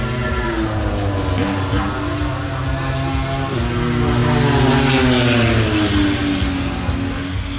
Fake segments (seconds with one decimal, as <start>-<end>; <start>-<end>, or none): none